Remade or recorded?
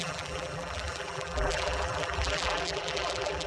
remade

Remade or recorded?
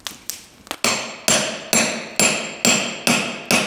recorded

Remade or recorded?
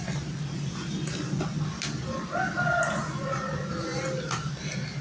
recorded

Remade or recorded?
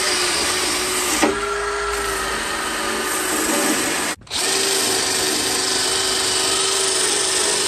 recorded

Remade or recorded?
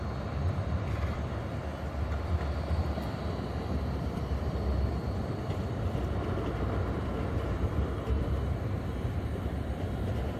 remade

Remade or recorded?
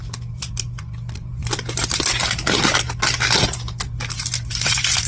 recorded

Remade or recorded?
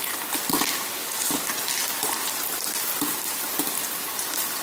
remade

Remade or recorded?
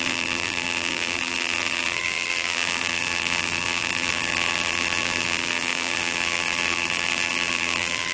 remade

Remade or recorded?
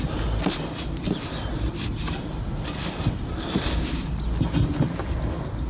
recorded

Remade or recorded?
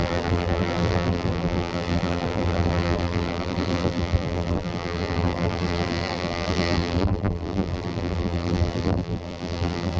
remade